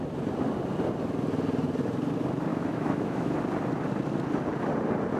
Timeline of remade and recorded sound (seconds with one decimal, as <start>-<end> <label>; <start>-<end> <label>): 0.0-2.5 recorded; 2.5-3.4 remade; 3.4-5.2 recorded